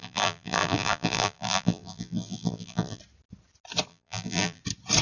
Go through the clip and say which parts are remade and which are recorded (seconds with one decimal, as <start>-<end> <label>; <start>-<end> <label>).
0.0-3.0 remade; 3.0-3.9 recorded; 3.9-4.6 remade; 4.6-5.0 recorded